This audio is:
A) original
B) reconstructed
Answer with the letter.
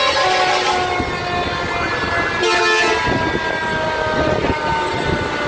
A